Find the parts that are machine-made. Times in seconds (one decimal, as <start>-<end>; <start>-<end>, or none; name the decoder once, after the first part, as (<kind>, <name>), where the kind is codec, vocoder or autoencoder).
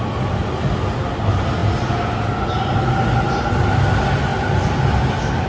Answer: none